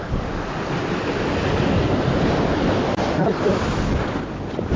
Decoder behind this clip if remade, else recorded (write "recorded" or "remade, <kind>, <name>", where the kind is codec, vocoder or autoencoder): recorded